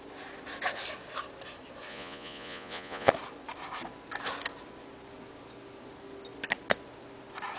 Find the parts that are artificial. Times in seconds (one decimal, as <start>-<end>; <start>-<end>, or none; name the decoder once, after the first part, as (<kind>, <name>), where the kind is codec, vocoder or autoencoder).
1.9-3.1 (vocoder, Vocos)